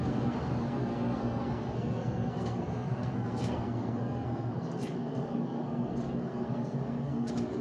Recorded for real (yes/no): no